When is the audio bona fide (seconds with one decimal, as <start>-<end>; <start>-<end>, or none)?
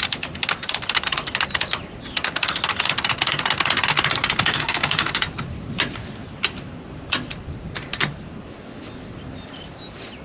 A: 0.0-4.5; 5.1-10.2